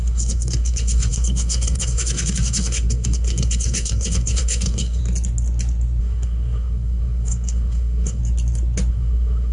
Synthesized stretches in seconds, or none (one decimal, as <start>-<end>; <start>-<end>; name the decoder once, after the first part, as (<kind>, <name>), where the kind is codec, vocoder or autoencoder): 0.0-5.0 (codec, SNAC); 6.0-8.2; 8.9-9.5